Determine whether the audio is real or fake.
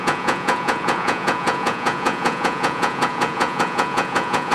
fake